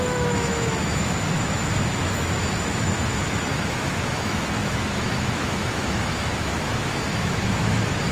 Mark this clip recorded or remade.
remade